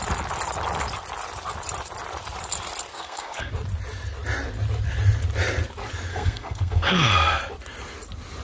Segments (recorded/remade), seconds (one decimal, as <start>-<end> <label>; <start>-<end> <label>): 0.0-2.9 recorded; 2.9-3.5 remade; 3.5-6.1 recorded; 6.1-7.4 remade; 7.4-8.4 recorded